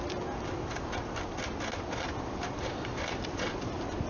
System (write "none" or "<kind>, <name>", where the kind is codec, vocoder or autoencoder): none